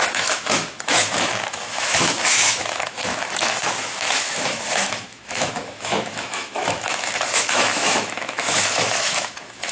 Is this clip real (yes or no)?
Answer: no